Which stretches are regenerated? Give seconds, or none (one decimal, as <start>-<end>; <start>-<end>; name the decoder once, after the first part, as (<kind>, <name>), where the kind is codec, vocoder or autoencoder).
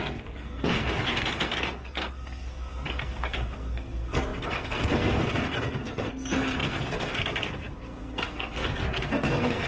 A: 0.0-9.7 (codec, SNAC)